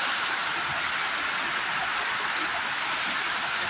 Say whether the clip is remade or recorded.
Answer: recorded